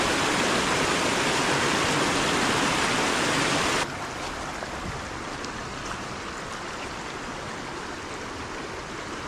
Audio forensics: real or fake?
real